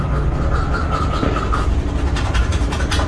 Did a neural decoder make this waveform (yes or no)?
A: no